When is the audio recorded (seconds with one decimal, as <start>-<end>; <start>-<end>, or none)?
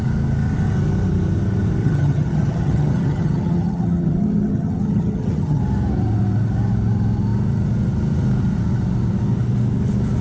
0.0-1.8; 5.6-10.2